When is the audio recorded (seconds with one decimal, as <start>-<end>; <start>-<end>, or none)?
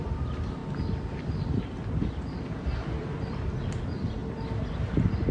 0.6-3.8; 4.2-5.3